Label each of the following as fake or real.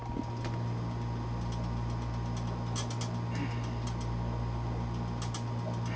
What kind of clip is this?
real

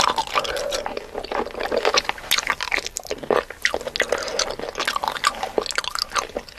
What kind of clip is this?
real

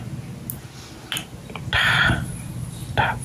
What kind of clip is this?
real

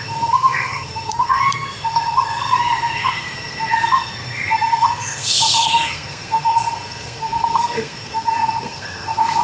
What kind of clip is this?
fake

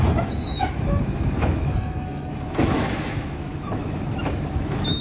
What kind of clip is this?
fake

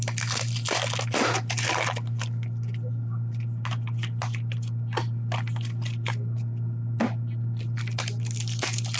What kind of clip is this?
real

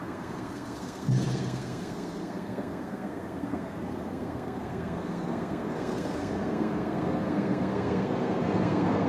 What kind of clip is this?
fake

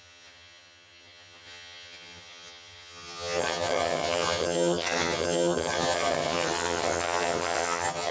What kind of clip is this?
fake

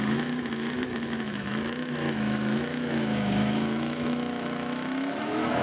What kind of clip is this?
fake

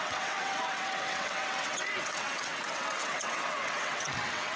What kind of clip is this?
fake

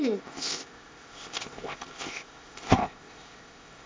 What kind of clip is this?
fake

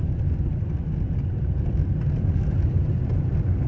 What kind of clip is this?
real